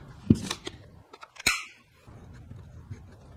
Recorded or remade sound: recorded